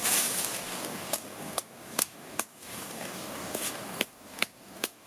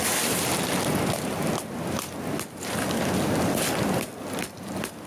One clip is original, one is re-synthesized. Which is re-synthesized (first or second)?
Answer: first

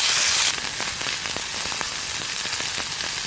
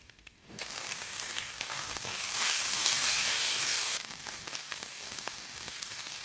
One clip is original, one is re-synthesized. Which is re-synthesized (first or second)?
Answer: second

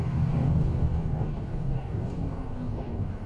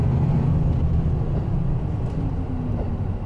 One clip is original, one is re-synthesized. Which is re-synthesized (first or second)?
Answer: first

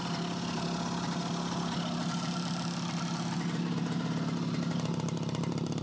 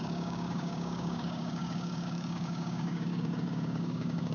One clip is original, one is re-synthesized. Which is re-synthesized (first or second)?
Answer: second